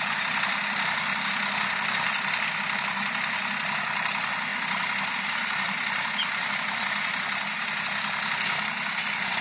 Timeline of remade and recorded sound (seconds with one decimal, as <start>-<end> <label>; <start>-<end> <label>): 0.0-4.5 recorded; 4.5-5.1 remade; 5.1-9.4 recorded